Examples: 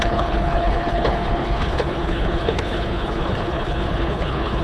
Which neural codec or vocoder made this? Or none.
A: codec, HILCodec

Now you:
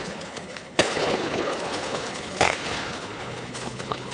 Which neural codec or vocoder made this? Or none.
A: codec, HILCodec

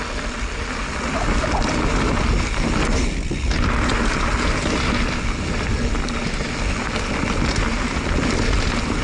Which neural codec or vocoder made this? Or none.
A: none